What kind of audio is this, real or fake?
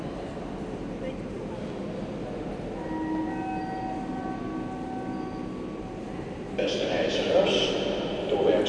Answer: real